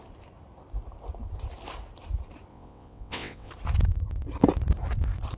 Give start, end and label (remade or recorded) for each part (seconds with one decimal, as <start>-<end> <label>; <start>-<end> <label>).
0.0-2.5 recorded; 2.5-3.5 remade; 3.5-5.4 recorded